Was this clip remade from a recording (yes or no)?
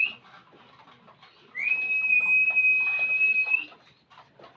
no